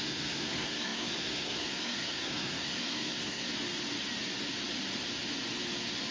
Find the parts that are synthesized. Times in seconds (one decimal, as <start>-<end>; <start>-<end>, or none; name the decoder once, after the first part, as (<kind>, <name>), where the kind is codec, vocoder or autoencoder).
0.0-3.5 (codec, SNAC)